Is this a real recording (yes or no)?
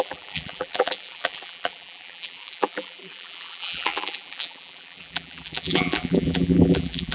no